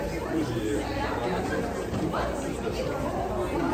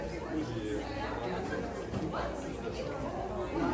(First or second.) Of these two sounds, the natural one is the second